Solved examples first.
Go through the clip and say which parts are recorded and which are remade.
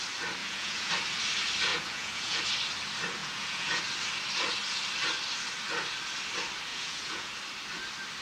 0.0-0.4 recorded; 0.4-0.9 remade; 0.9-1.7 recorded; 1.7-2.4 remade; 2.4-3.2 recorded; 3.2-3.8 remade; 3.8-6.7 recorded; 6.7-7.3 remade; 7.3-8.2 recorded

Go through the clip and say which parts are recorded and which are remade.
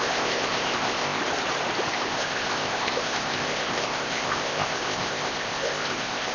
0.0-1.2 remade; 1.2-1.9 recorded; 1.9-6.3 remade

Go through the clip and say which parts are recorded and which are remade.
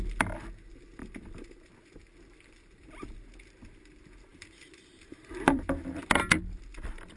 0.0-1.0 recorded; 1.0-1.7 remade; 1.7-4.3 recorded; 4.3-6.1 remade; 6.1-6.7 recorded; 6.7-7.2 remade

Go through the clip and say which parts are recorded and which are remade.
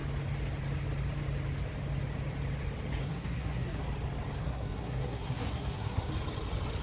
0.0-3.0 recorded; 3.0-3.8 remade; 3.8-4.4 recorded; 4.4-6.1 remade; 6.1-6.8 recorded